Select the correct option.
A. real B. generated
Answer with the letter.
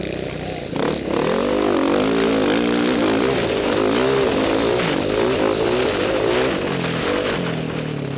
A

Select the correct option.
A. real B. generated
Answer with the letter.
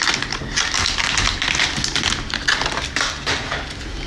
A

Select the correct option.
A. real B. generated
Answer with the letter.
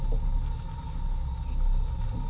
A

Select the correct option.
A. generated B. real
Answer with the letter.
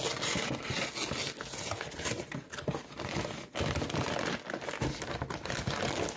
B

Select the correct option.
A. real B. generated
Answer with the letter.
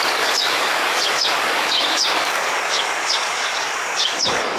B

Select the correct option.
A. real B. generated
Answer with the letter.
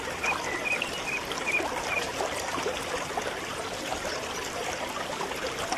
A